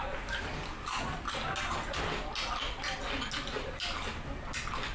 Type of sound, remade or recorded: recorded